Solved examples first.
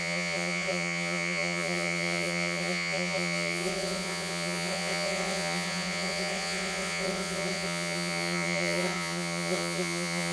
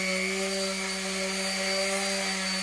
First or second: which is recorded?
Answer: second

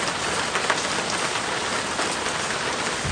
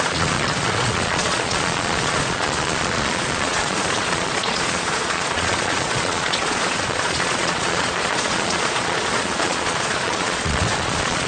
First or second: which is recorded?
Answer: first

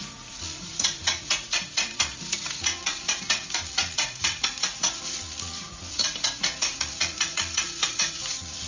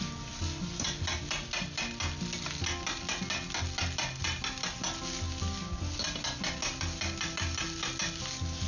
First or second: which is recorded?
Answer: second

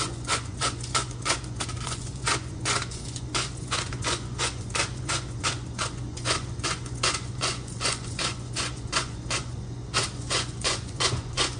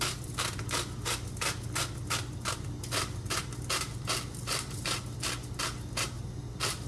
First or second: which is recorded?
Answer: second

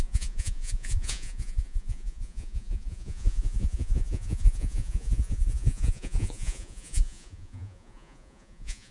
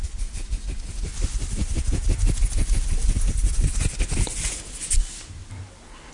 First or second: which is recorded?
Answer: second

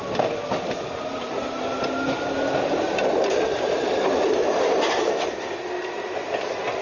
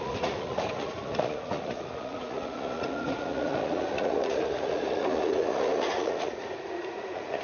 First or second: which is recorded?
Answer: first